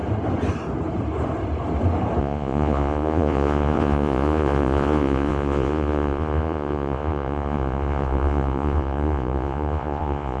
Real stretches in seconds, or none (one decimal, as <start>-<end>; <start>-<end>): 0.0-2.2